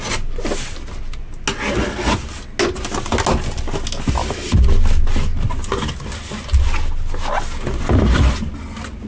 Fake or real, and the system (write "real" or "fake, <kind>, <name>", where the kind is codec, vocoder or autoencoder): real